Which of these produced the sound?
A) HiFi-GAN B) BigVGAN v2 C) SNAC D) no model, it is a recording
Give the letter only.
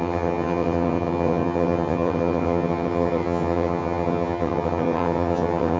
A